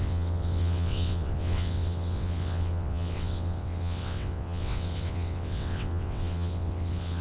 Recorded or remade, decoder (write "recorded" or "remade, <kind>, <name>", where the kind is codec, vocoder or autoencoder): remade, vocoder, WaveNeXt